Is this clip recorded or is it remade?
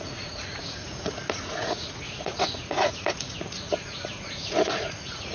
remade